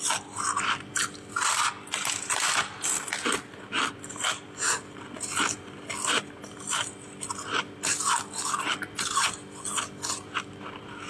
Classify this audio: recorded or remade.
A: recorded